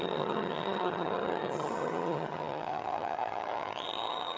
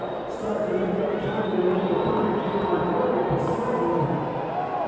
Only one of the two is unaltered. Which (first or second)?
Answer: second